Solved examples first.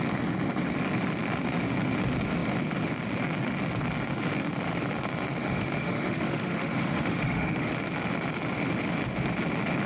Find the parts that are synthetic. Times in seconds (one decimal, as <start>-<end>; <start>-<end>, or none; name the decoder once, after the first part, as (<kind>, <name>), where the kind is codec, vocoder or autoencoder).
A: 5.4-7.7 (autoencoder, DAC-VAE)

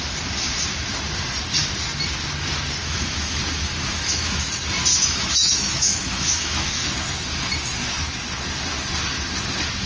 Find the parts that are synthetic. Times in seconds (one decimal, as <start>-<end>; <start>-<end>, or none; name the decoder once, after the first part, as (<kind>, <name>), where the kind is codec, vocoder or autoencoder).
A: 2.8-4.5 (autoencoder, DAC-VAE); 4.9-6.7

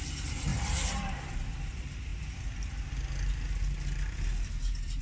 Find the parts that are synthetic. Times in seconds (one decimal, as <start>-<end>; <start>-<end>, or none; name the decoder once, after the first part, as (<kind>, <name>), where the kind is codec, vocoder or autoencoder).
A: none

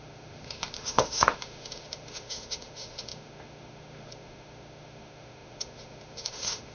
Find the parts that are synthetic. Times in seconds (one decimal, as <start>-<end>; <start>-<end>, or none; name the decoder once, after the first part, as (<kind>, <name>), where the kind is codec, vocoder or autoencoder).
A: 0.0-6.7 (autoencoder, DAC-VAE)

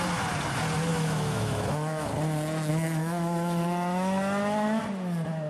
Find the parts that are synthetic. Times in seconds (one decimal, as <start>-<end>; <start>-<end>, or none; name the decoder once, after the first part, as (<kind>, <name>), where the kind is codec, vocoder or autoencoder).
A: 0.9-2.1 (autoencoder, DAC-VAE); 2.7-4.8

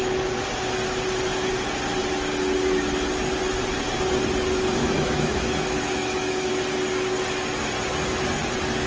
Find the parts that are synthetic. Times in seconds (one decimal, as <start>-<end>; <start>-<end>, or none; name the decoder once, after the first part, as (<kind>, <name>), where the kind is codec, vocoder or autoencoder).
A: 4.8-6.5 (autoencoder, DAC-VAE)